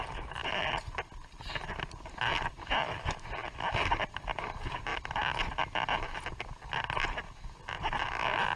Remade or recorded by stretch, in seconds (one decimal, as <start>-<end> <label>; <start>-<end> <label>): 0.0-8.6 recorded